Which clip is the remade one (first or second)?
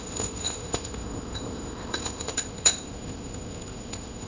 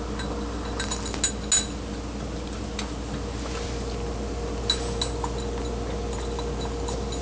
first